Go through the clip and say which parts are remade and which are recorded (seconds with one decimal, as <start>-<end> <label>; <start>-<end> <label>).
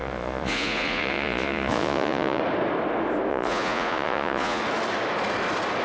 0.0-2.4 remade; 2.4-3.3 recorded; 3.3-4.6 remade; 4.6-5.8 recorded